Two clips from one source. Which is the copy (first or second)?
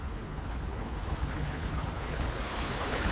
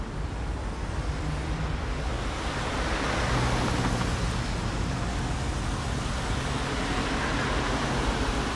first